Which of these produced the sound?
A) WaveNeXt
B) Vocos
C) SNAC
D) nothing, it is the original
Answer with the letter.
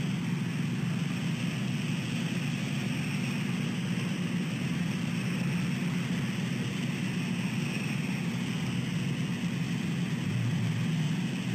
D